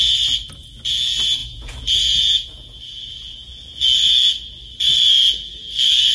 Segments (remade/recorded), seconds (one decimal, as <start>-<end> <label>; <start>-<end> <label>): 0.0-1.4 recorded; 1.4-2.8 remade; 2.8-6.1 recorded